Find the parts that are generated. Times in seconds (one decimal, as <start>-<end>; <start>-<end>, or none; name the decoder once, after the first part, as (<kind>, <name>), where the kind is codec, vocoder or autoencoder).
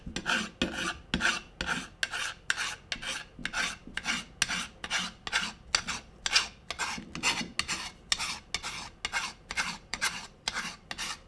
9.2-10.9 (vocoder, BigVGAN v2)